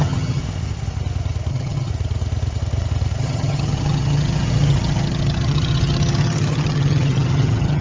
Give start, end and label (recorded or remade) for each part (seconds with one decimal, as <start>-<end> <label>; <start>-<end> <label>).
0.0-0.4 remade; 0.4-1.5 recorded; 1.5-1.9 remade; 1.9-3.2 recorded; 3.2-7.8 remade